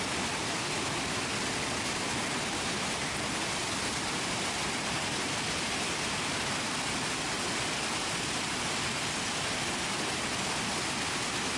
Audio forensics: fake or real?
real